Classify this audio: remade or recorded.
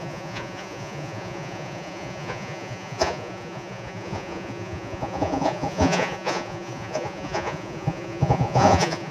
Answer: remade